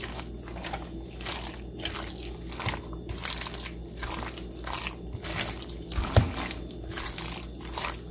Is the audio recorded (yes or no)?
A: yes